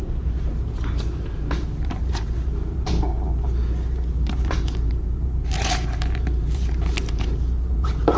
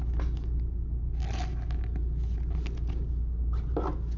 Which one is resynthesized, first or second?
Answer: first